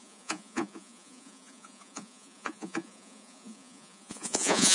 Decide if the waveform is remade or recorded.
remade